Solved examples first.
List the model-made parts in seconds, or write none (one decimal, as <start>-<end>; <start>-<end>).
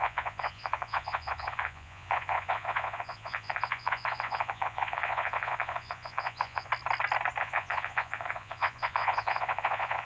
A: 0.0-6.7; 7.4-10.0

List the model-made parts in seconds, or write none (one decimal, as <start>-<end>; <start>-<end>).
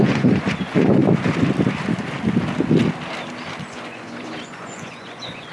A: 0.0-1.0; 3.6-5.5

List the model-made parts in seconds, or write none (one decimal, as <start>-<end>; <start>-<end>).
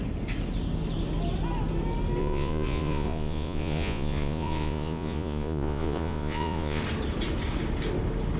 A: 2.2-6.8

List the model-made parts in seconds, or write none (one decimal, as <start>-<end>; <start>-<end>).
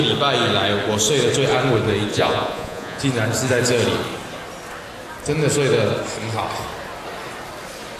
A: 2.1-3.0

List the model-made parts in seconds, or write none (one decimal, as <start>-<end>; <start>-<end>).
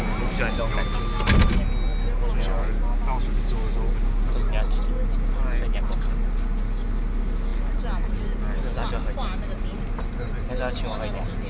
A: none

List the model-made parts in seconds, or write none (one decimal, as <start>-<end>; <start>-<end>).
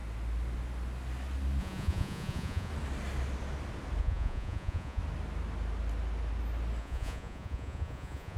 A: 1.6-2.7; 4.0-5.0; 6.8-8.4